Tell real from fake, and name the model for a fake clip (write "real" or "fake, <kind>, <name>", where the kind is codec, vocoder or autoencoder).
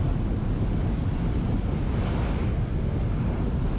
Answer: real